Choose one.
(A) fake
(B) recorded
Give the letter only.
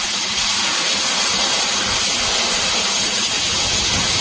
B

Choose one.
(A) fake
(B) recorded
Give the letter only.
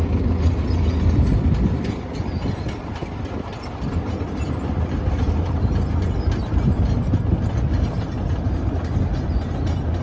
B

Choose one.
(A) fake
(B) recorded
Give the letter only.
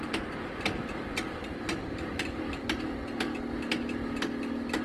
B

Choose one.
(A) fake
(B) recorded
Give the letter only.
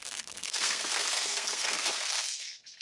A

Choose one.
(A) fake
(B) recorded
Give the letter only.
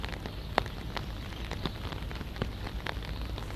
B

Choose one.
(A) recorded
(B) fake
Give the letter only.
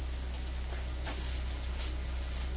A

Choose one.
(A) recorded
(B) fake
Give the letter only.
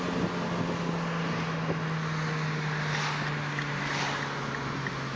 A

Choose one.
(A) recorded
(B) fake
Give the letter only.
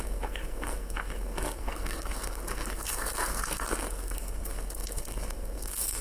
B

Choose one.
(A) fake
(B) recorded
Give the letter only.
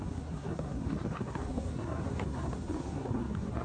A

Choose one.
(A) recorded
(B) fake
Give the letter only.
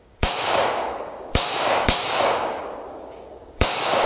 B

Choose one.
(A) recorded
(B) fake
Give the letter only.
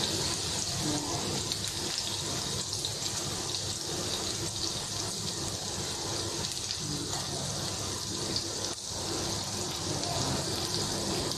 A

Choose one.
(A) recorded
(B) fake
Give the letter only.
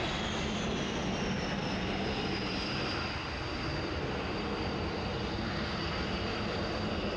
A